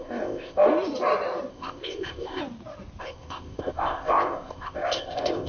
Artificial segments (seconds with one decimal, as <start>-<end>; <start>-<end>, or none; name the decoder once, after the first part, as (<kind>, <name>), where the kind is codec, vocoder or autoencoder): 0.0-0.7 (codec, ZipCodec); 1.5-2.4; 3.0-5.5